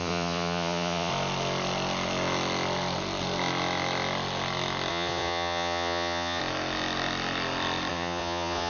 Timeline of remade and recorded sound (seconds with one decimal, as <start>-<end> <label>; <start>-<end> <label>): 0.0-1.1 remade; 1.1-4.9 recorded; 4.9-6.4 remade; 6.4-7.9 recorded; 7.9-8.7 remade

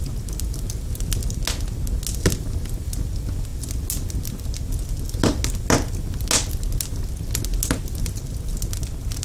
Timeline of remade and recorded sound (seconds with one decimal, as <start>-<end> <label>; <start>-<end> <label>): 0.0-9.2 recorded

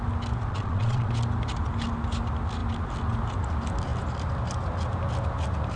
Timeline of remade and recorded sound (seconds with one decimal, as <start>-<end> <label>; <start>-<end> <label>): 0.0-0.5 recorded; 0.5-1.1 remade; 1.1-5.8 recorded

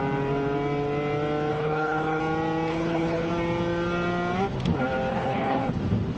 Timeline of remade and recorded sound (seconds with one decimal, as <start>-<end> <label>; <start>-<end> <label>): 0.0-1.5 recorded; 1.5-2.2 remade; 2.2-2.7 recorded; 2.7-3.3 remade; 3.3-5.1 recorded; 5.1-5.7 remade; 5.7-6.2 recorded

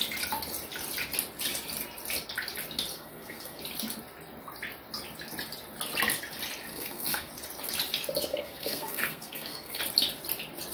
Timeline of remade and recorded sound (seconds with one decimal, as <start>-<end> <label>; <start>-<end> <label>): 0.0-2.9 recorded; 2.9-3.6 remade; 3.6-6.7 recorded; 6.7-7.3 remade; 7.3-8.3 recorded; 8.3-9.8 remade; 9.8-10.7 recorded

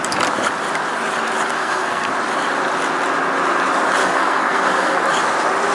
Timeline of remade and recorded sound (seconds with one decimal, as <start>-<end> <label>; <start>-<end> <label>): 0.0-1.5 recorded; 1.5-2.1 remade; 2.1-4.0 recorded; 4.0-5.0 remade; 5.0-5.7 recorded

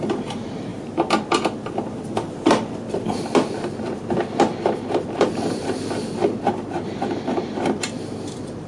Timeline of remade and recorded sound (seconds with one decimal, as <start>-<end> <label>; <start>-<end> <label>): 0.0-0.7 remade; 0.7-4.9 recorded; 4.9-8.7 remade